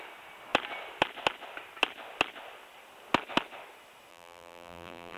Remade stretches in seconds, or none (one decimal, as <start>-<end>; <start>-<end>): 4.1-5.2